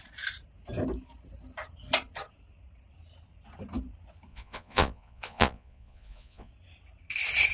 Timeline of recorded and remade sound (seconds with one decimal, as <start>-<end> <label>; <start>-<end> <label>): 0.0-4.3 recorded; 4.3-6.5 remade; 6.5-7.5 recorded